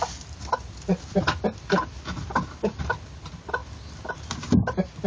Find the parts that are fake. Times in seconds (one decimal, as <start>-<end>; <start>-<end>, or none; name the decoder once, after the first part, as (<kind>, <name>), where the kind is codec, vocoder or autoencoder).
none